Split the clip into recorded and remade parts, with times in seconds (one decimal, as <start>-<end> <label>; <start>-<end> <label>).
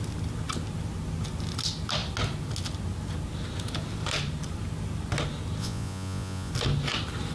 0.0-5.6 recorded; 5.6-6.5 remade; 6.5-7.3 recorded